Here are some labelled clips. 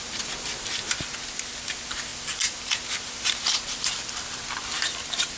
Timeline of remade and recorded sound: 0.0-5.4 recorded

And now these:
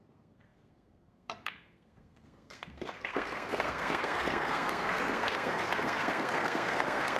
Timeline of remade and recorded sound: 0.0-7.2 remade

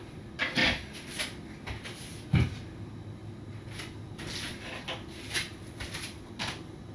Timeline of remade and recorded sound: 0.0-6.9 recorded